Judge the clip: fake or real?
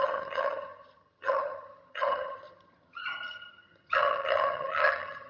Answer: fake